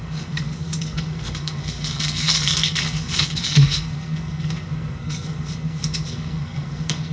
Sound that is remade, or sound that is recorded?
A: remade